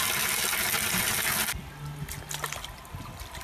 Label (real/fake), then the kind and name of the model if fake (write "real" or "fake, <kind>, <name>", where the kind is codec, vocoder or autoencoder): real